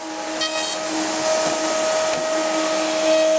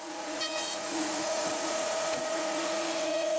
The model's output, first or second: second